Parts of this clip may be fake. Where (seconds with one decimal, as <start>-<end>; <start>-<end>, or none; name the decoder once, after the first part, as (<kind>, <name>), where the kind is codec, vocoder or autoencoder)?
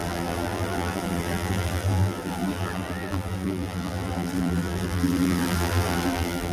0.0-6.5 (vocoder, BigVGAN v2)